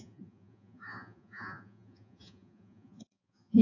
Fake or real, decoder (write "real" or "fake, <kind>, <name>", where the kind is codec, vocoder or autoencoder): fake, vocoder, Vocos